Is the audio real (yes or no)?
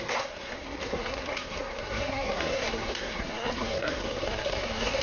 no